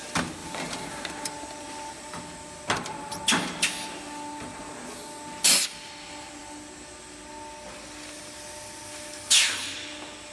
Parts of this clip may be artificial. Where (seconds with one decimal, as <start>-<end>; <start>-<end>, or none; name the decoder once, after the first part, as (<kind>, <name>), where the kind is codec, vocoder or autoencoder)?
0.4-2.2 (vocoder, BigVGAN v2)